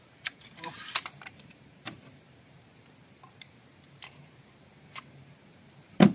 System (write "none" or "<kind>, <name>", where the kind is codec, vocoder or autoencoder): vocoder, BigVGAN v2